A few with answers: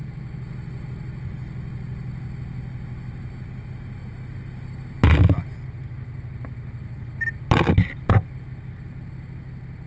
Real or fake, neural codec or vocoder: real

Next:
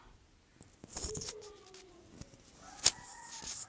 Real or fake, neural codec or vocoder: real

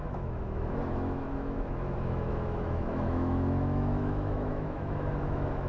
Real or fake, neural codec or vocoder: fake, autoencoder, DAC-VAE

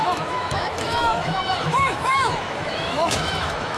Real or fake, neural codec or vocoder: fake, autoencoder, DAC-VAE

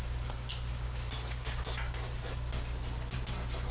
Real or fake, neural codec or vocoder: real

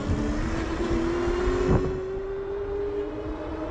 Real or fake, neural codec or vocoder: real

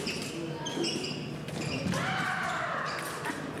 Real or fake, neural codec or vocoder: real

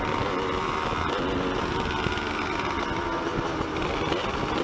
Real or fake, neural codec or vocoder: real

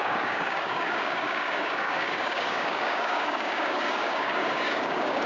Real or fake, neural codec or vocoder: fake, codec, DAC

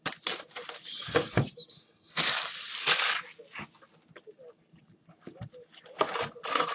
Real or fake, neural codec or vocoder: real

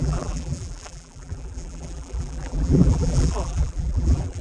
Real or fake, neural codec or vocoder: fake, vocoder, BigVGAN v2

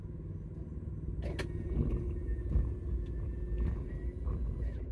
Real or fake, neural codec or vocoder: real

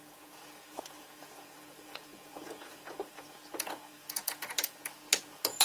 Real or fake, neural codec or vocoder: fake, vocoder, Vocos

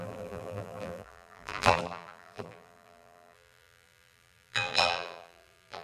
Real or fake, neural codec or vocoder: fake, vocoder, BigVGAN v2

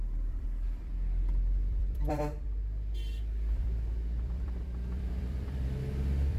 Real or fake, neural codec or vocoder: fake, vocoder, BigVGAN v2